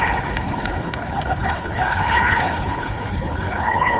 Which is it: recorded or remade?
remade